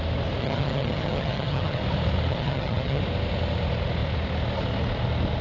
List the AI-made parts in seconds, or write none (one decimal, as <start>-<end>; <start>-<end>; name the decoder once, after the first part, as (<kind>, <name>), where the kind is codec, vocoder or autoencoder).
0.4-1.8 (vocoder, HiFi-GAN); 2.3-3.0